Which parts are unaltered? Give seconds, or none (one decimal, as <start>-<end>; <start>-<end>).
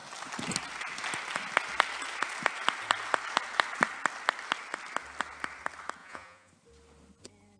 0.0-6.0; 6.5-7.6